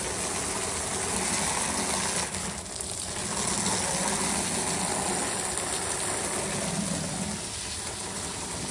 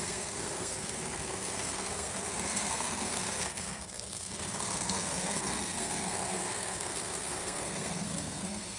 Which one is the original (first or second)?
first